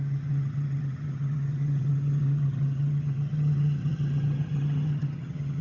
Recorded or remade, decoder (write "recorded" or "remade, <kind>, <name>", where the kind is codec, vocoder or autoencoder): remade, vocoder, HiFi-GAN